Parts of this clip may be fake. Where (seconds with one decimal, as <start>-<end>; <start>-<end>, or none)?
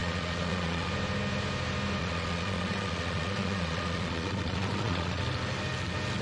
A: 0.0-0.9; 2.0-5.2